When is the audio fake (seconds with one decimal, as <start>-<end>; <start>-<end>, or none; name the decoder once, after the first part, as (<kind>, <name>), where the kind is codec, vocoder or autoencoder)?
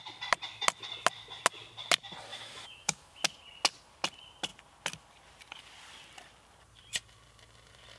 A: 2.3-3.2 (autoencoder, DAC-VAE)